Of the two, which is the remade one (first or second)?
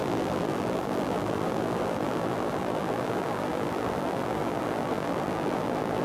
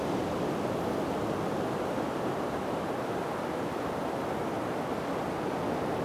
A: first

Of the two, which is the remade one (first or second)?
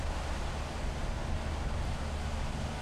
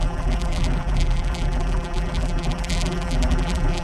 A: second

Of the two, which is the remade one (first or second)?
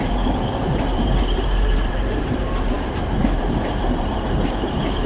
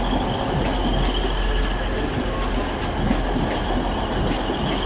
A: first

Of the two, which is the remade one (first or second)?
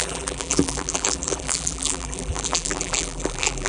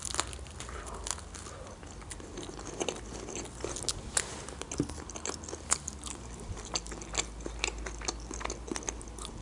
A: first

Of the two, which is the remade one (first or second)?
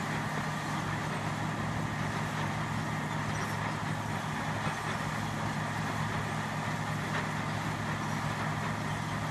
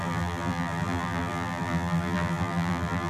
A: second